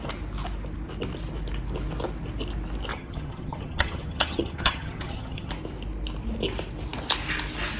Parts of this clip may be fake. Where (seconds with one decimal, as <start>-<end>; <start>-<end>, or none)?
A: 2.9-5.5